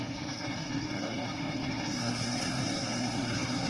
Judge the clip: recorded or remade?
remade